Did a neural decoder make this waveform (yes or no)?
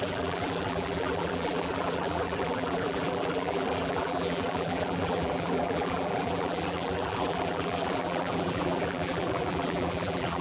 yes